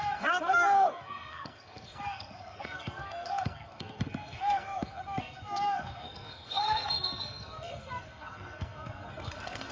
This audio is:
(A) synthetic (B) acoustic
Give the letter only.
A